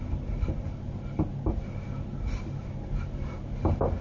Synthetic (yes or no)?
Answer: no